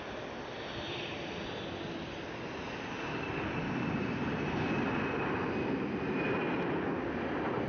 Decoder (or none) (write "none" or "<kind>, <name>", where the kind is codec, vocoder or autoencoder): none